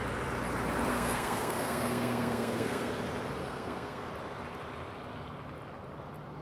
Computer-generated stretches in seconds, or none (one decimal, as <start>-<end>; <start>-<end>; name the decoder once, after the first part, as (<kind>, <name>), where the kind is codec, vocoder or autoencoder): 0.9-2.9 (codec, SNAC); 3.4-4.1

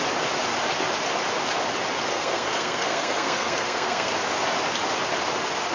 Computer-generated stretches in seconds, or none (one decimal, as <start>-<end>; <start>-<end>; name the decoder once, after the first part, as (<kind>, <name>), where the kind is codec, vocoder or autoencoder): 2.1-4.1 (codec, SNAC)

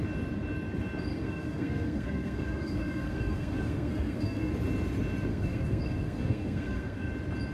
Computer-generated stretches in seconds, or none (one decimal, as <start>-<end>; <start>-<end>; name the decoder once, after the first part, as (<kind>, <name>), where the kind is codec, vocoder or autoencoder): 1.1-4.5 (codec, SNAC); 5.3-7.1

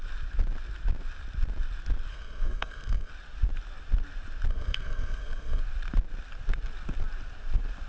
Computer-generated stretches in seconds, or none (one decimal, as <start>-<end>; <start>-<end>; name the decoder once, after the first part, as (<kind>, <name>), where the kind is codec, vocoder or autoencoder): 2.1-3.1 (codec, SNAC); 4.5-5.6

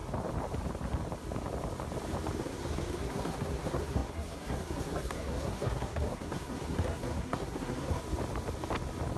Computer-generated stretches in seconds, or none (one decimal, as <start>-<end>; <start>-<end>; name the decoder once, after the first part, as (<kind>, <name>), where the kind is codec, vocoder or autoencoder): 2.4-8.0 (codec, SNAC)

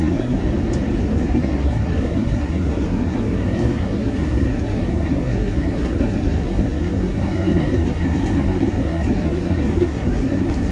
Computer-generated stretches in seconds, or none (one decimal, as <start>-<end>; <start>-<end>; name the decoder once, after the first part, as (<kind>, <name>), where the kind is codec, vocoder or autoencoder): 0.0-0.4 (codec, SNAC); 1.0-10.7

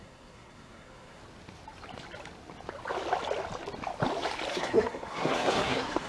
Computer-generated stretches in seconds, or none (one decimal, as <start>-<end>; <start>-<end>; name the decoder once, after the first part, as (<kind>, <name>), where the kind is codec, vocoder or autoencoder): 0.0-1.2 (codec, SNAC); 4.5-6.1